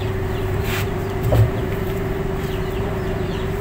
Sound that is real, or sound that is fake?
fake